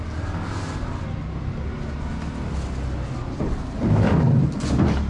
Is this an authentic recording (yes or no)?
yes